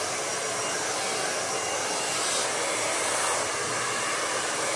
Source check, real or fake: real